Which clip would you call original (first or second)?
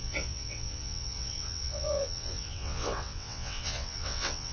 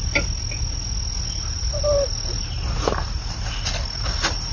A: second